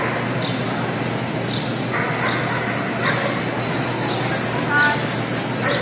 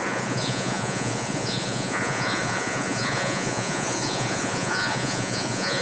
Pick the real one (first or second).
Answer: first